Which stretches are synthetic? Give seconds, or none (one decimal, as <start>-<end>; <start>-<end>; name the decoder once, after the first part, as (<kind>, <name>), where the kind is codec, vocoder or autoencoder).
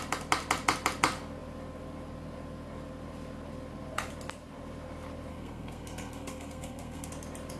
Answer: 5.3-7.1 (codec, SNAC)